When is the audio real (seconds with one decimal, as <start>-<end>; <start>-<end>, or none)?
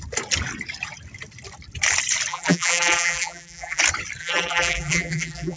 0.0-2.3; 3.8-4.2